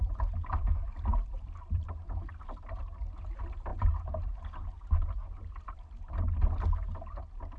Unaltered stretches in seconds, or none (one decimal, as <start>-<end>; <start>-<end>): 0.0-1.1; 2.3-3.7; 5.1-7.6